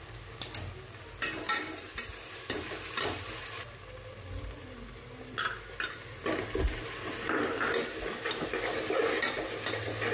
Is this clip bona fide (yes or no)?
yes